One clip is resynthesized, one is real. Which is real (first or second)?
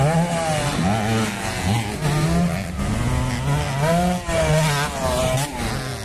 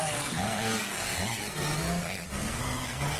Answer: first